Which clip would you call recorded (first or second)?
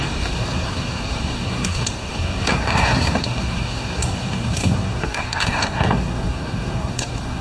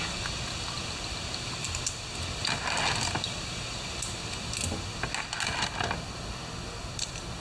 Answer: second